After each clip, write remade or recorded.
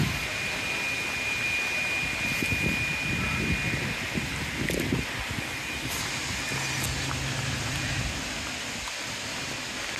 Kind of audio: recorded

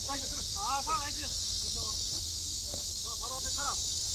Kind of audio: remade